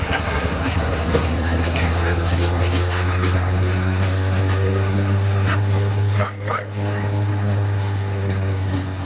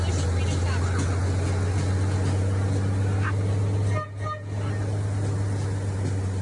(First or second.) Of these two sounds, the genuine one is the second